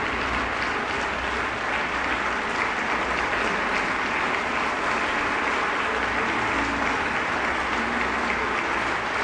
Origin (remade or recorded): recorded